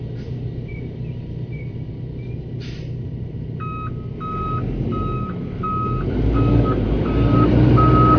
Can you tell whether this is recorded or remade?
recorded